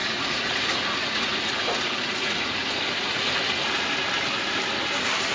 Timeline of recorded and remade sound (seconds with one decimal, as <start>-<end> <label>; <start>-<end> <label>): 0.0-3.2 remade; 3.2-5.3 recorded